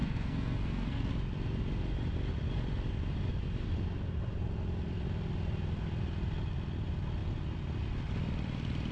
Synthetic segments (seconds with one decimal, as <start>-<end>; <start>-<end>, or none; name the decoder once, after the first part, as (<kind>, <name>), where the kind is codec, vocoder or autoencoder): 0.0-1.1 (codec, SNAC)